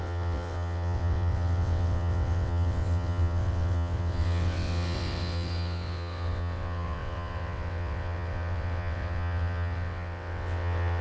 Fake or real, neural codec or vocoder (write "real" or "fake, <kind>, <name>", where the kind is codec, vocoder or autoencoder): fake, vocoder, WaveNeXt